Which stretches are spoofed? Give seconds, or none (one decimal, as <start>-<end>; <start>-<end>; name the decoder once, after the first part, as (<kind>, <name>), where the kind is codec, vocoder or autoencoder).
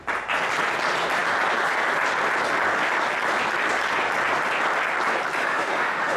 5.4-6.2 (autoencoder, DAC-VAE)